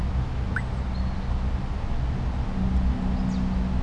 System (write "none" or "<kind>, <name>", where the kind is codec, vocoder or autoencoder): none